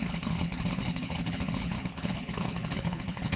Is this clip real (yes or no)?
no